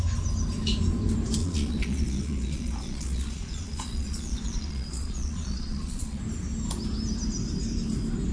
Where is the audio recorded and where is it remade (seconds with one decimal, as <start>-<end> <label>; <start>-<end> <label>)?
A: 0.0-1.4 recorded; 1.4-6.2 remade; 6.2-8.3 recorded

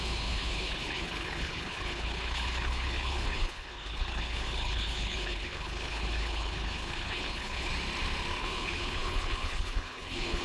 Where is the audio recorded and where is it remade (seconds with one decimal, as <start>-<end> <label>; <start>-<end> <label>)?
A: 0.0-7.7 remade; 7.7-8.4 recorded; 8.4-10.4 remade

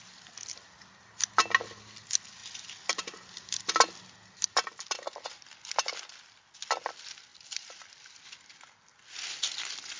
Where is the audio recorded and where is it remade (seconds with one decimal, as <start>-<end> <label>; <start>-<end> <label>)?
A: 0.0-7.3 recorded; 7.3-7.9 remade; 7.9-10.0 recorded

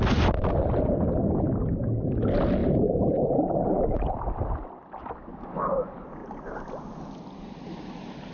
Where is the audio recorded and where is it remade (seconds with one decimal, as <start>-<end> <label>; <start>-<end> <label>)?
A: 0.0-2.6 recorded; 2.6-4.7 remade; 4.7-8.3 recorded